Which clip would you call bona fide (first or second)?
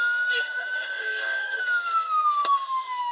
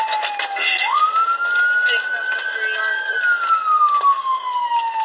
second